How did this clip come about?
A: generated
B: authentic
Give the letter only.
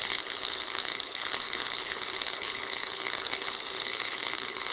A